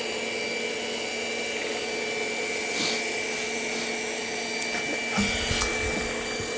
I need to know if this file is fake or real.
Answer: real